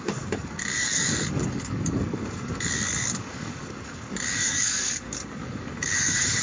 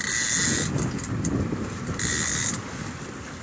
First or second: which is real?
second